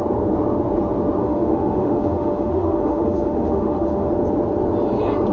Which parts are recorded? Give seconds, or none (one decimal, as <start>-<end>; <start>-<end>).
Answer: 0.0-1.2; 4.1-5.3